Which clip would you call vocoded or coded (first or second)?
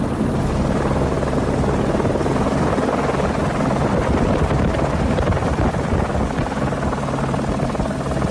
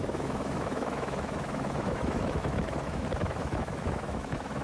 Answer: second